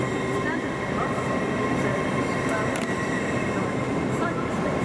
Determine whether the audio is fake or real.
fake